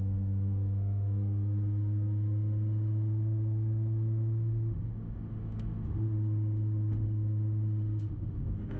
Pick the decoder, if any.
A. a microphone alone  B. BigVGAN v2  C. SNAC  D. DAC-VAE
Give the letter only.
D